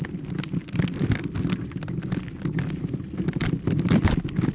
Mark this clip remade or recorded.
recorded